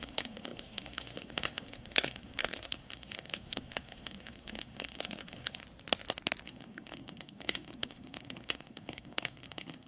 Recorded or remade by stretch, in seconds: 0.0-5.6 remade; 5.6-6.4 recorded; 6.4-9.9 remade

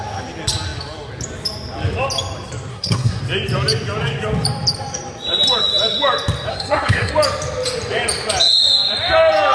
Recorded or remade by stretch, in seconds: 0.0-2.7 recorded; 2.7-3.2 remade; 3.2-6.5 recorded; 6.5-7.1 remade; 7.1-9.5 recorded

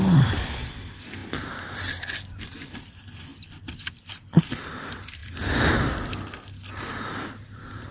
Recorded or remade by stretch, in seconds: 0.0-7.9 recorded

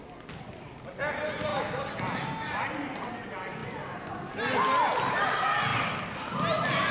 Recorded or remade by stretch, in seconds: 0.0-6.9 recorded

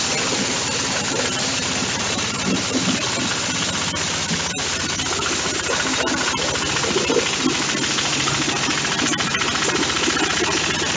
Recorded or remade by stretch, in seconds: 0.0-1.0 recorded; 1.0-2.4 remade; 2.4-11.0 recorded

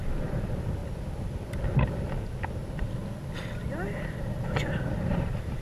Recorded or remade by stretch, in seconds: 0.0-0.8 remade; 0.8-4.2 recorded; 4.2-5.6 remade